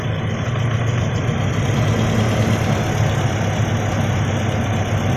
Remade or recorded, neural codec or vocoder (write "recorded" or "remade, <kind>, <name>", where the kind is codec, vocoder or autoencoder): recorded